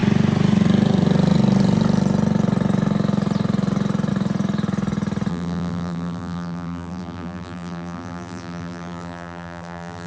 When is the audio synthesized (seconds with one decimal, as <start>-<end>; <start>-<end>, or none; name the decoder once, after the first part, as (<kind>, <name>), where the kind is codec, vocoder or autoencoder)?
5.3-10.1 (vocoder, BigVGAN v2)